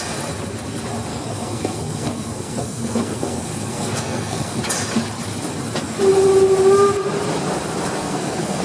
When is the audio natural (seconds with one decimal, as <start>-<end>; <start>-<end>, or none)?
0.0-1.1; 4.6-8.0

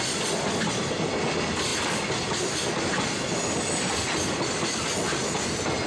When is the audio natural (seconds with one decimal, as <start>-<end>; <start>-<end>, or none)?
0.0-5.9

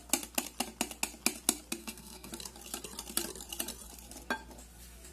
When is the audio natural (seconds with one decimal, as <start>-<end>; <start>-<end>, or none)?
0.0-1.8; 2.3-5.1

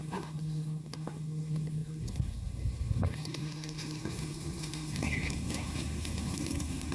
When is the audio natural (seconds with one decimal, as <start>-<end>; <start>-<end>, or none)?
none

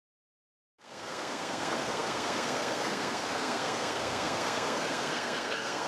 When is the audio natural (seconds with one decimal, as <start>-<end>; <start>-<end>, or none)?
none

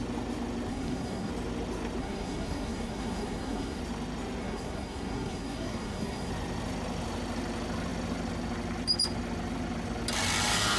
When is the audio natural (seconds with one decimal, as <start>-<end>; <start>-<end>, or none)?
0.0-0.7; 1.3-2.0; 3.8-4.4; 6.3-10.8

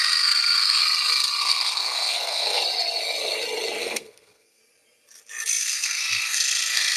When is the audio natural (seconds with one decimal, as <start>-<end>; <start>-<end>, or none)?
0.8-1.4; 2.6-3.8; 4.6-5.6

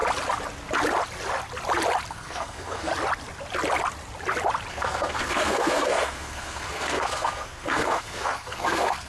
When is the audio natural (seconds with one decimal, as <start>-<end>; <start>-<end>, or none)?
0.0-2.1; 2.9-4.7